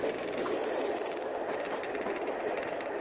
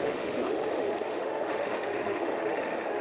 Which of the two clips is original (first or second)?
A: first